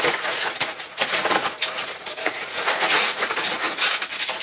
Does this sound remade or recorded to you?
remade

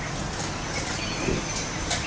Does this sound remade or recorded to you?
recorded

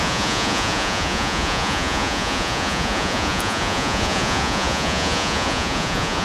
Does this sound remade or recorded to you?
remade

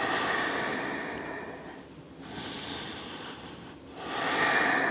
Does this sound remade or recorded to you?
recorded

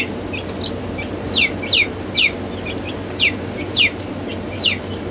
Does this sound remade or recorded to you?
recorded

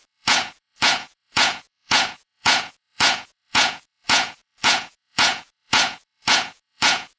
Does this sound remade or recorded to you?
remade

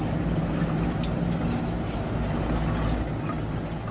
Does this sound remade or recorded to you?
recorded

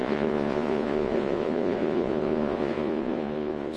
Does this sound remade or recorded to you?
remade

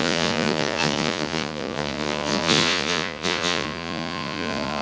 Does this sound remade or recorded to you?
remade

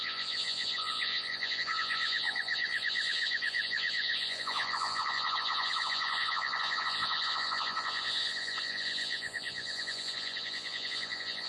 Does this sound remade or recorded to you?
remade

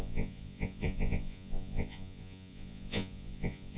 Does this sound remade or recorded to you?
remade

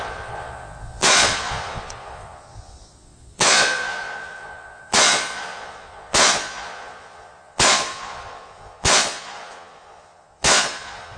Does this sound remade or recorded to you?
remade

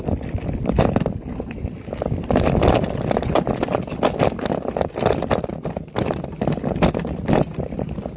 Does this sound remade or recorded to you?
recorded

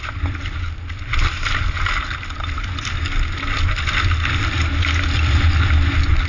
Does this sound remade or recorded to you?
recorded